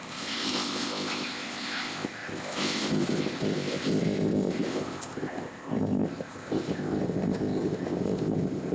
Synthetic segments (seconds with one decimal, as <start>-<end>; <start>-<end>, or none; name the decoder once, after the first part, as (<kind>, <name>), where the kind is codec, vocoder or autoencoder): 0.0-8.7 (codec, ZipCodec)